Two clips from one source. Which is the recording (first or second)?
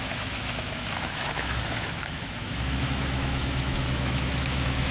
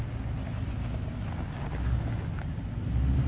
second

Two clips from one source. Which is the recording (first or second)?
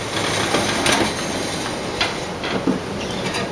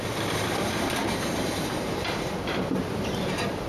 first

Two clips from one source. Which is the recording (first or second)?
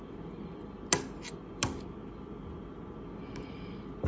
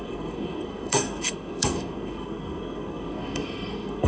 first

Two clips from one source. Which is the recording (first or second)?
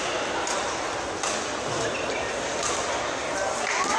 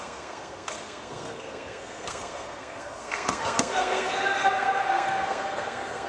first